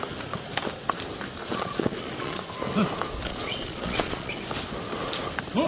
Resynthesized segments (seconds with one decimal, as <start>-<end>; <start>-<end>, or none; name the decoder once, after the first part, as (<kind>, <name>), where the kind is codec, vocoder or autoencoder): 1.4-2.4 (vocoder, Vocos); 3.3-4.3